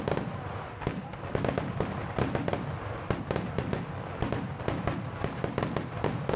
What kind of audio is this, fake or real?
real